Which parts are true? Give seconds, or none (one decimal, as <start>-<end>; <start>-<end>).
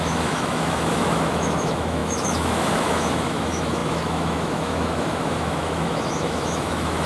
none